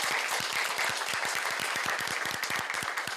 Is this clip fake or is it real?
real